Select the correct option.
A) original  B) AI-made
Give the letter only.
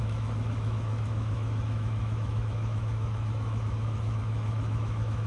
B